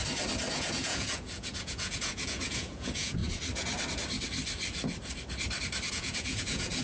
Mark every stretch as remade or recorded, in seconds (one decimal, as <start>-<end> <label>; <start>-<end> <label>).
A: 0.0-0.5 recorded; 0.5-3.2 remade; 3.2-5.9 recorded; 5.9-6.8 remade